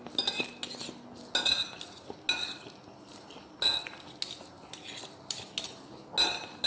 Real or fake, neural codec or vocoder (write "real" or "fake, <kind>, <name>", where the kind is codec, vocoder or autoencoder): real